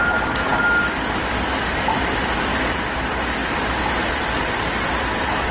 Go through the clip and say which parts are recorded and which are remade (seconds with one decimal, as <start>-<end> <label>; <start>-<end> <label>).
0.0-5.5 recorded